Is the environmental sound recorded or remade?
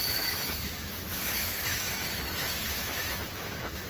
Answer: remade